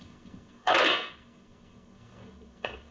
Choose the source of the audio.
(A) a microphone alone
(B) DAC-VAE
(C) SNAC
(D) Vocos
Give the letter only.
C